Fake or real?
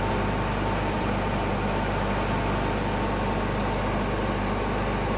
fake